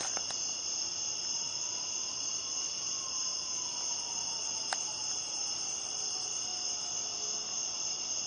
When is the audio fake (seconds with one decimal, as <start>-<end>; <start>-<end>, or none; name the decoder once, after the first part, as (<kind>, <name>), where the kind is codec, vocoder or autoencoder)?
0.0-3.3 (vocoder, BigVGAN v2); 5.3-6.5; 7.7-8.3